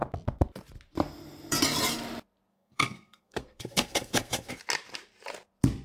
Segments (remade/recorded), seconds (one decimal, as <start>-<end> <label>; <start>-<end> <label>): 0.0-2.5 recorded; 2.5-4.5 remade; 4.5-5.8 recorded